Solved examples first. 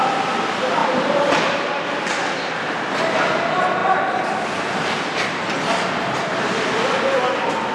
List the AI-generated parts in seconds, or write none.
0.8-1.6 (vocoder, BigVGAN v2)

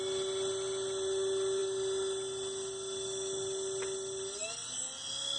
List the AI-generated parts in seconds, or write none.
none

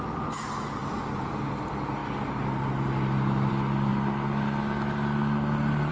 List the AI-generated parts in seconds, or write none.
0.8-1.4 (vocoder, BigVGAN v2)